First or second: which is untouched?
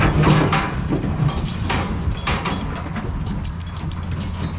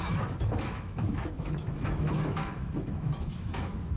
first